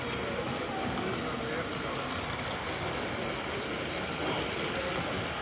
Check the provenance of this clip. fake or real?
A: real